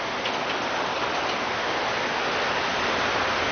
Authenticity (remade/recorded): recorded